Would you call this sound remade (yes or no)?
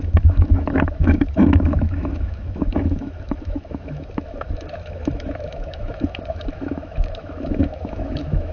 yes